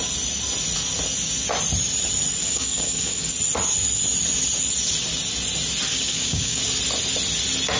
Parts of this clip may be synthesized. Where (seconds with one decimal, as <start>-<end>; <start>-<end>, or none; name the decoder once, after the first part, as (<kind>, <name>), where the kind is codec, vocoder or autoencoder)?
2.4-3.3 (codec, DAC); 5.9-6.6